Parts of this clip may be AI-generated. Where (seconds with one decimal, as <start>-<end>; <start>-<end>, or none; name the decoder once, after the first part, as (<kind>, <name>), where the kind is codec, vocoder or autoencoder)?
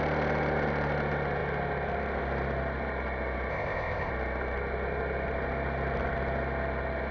3.5-4.1 (codec, ZipCodec)